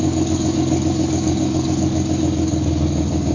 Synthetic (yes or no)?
yes